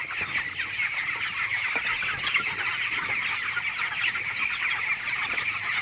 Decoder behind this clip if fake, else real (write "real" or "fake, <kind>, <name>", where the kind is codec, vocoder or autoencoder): real